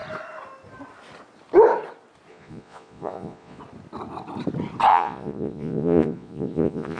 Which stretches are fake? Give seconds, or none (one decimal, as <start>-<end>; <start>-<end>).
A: 2.3-3.6; 4.9-7.0